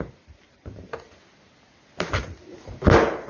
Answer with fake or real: real